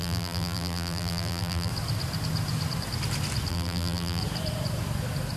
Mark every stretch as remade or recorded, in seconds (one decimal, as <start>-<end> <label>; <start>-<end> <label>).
0.0-1.7 remade; 1.7-3.5 recorded; 3.5-4.2 remade; 4.2-5.4 recorded